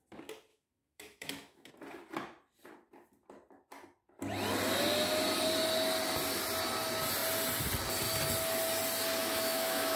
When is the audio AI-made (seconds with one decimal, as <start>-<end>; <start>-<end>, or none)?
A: 0.5-1.7; 9.2-10.0